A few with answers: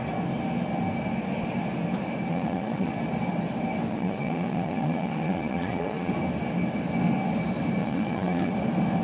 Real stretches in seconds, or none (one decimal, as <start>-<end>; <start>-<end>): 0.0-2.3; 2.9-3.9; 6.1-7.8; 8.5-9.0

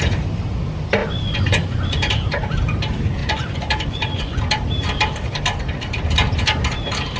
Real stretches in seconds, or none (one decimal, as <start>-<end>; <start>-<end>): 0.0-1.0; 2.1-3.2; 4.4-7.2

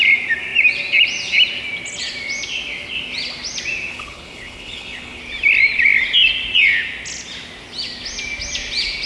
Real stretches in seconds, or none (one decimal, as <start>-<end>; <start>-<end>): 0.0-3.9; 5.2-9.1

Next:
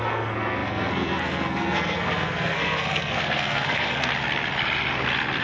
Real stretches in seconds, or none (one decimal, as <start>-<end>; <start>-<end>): 4.1-5.4

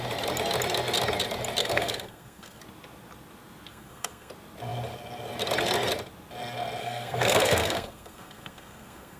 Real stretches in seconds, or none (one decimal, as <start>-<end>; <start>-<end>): 0.0-1.6; 2.6-3.7; 4.3-6.8

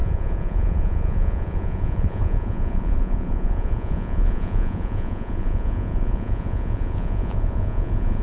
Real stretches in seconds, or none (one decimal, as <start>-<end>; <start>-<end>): none

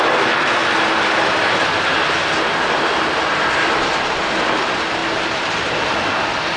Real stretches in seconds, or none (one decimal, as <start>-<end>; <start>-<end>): 0.0-5.0; 6.1-6.6